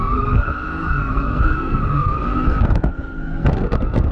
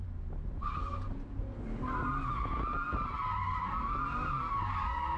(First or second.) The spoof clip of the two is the first